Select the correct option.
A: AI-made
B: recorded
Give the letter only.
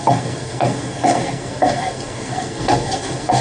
A